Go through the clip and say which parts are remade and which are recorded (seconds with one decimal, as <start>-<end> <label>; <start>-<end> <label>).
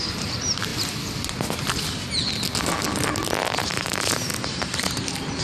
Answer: 0.0-0.7 remade; 0.7-3.4 recorded; 3.4-5.4 remade